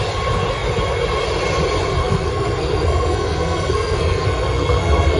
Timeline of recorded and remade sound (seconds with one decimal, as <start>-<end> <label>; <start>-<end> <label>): 0.0-2.0 recorded; 2.0-5.2 remade